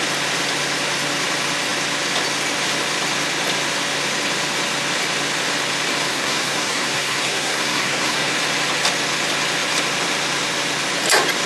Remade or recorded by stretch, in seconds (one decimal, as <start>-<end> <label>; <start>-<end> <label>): 0.0-6.1 recorded; 6.1-8.3 remade; 8.3-11.5 recorded

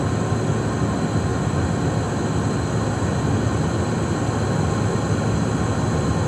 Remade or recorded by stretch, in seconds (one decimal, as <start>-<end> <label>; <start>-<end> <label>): 0.0-6.3 recorded

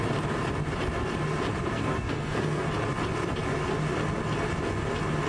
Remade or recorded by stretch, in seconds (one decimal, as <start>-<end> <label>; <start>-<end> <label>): 0.0-1.7 recorded; 1.7-2.7 remade; 2.7-5.3 recorded

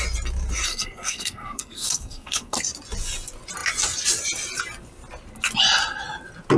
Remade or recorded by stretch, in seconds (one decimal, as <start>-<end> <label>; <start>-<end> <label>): 0.0-0.7 recorded; 0.7-2.6 remade; 2.6-6.6 recorded